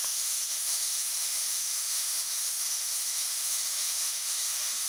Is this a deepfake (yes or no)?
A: yes